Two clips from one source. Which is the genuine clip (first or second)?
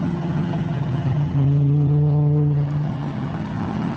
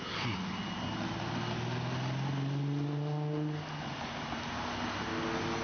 second